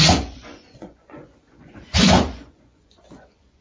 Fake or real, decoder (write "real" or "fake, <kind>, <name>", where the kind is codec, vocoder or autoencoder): fake, vocoder, Vocos